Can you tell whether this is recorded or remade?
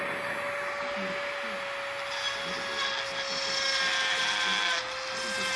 recorded